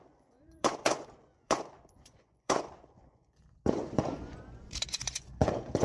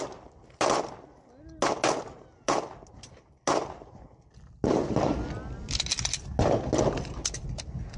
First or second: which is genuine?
second